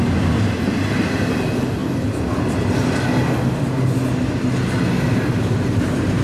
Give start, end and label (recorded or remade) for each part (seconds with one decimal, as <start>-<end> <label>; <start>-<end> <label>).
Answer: 0.0-6.2 recorded